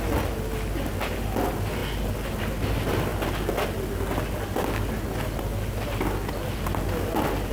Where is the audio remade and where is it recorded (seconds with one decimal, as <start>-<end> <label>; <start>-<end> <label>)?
0.0-7.5 recorded